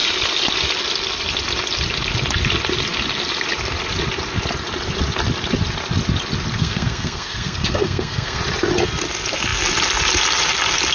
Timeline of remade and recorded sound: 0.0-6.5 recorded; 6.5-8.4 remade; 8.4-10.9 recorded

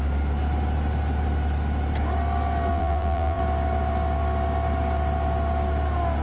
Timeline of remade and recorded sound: 0.0-2.7 recorded; 2.7-3.4 remade; 3.4-6.2 recorded

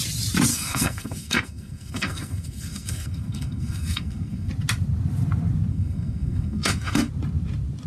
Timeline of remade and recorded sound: 0.0-0.5 recorded; 0.5-4.5 remade; 4.5-5.7 recorded; 5.7-7.1 remade; 7.1-7.9 recorded